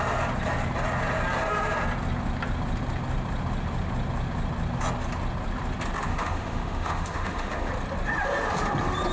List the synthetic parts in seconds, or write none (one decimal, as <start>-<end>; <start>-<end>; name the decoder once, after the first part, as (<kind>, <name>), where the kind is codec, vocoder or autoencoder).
6.1-7.7 (autoencoder, DAC-VAE)

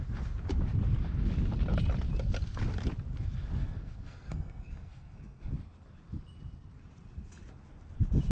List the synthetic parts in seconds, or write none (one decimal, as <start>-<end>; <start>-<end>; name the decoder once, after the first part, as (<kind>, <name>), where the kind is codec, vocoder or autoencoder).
3.6-5.5 (codec, SNAC)

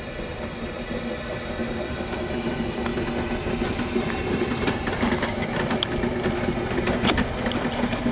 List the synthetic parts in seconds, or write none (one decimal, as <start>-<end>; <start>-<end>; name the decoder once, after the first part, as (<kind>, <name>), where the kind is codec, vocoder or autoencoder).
none

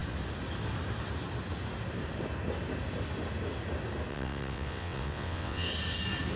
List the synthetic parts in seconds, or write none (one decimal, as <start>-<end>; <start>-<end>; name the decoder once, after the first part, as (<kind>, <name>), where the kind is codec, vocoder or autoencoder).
4.1-5.7 (vocoder, WaveNeXt)

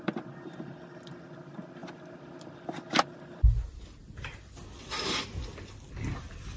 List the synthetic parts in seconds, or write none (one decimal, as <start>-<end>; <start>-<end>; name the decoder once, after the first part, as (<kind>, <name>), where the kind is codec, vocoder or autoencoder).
none

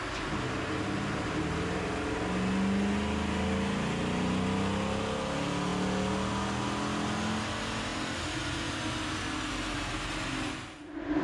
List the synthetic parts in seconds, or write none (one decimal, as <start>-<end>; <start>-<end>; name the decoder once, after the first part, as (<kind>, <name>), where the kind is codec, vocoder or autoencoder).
none

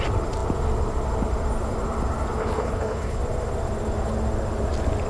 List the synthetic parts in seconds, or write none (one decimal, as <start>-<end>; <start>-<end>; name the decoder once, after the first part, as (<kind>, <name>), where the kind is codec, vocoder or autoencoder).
2.4-3.2 (codec, HILCodec)

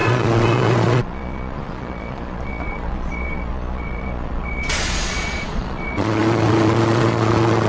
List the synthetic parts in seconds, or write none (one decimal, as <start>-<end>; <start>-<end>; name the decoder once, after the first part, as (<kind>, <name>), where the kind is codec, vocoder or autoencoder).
0.0-7.7 (vocoder, Vocos)